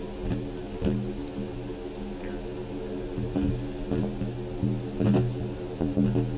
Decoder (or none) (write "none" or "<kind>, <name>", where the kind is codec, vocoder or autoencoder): none